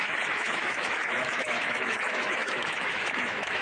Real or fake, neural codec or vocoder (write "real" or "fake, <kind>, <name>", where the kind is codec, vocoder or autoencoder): fake, autoencoder, DAC-VAE